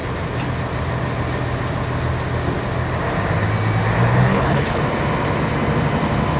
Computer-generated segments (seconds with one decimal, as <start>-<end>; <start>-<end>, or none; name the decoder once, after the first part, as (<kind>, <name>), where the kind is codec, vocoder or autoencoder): 4.3-4.8 (codec, HILCodec)